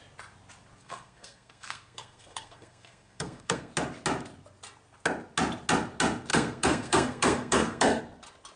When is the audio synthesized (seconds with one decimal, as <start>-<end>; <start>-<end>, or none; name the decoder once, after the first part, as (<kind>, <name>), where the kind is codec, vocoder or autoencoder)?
0.8-3.7 (codec, SNAC); 6.3-8.0